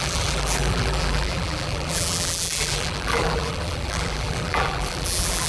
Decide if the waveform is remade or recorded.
remade